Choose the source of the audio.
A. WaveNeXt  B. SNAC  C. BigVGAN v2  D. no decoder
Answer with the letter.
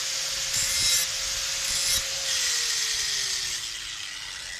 D